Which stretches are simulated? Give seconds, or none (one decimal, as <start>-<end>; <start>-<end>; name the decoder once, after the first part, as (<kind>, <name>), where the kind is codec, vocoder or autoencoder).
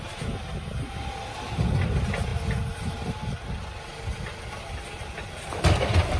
none